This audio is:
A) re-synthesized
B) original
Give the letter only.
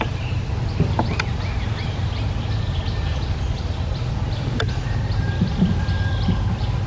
B